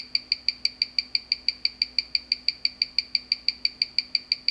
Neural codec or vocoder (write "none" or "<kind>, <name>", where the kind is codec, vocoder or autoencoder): none